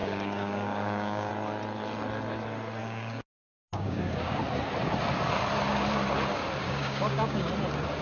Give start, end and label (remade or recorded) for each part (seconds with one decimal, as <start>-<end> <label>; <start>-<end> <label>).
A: 0.0-1.3 remade; 1.3-2.8 recorded; 2.8-4.4 remade; 4.4-6.6 recorded; 6.6-7.5 remade; 7.5-8.0 recorded